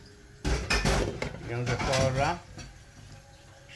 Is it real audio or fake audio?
real